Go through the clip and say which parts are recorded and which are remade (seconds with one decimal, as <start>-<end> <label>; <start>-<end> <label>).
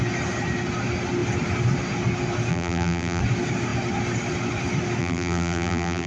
0.0-2.5 recorded; 2.5-3.2 remade; 3.2-5.0 recorded; 5.0-6.1 remade